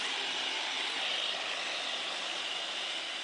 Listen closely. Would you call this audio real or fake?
real